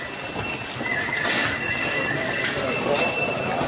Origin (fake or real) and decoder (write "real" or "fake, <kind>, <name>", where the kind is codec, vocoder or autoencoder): real